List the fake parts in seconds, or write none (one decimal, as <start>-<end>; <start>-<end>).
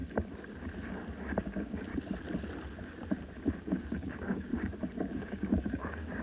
1.4-1.9; 3.6-4.5; 5.1-6.2